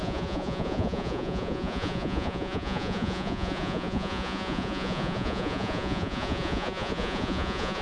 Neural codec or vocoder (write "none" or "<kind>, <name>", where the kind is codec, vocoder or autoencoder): vocoder, Vocos